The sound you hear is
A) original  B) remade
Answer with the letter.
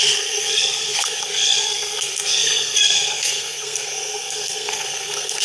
B